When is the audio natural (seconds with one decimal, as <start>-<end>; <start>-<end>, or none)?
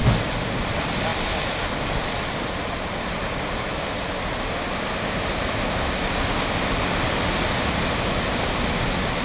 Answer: 0.0-9.2